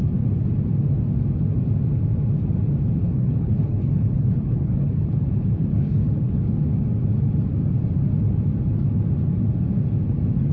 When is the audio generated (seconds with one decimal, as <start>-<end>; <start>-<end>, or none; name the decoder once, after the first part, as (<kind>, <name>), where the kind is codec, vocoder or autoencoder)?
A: 3.0-5.1 (codec, HILCodec); 5.7-6.4